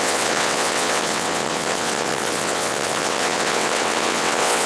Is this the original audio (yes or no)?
no